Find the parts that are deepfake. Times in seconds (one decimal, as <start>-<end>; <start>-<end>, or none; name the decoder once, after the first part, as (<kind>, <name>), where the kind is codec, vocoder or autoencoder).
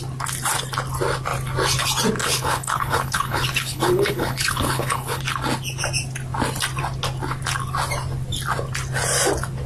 2.2-5.2 (codec, HILCodec)